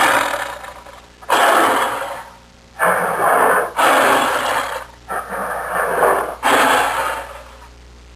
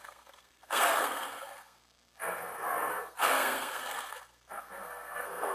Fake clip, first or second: second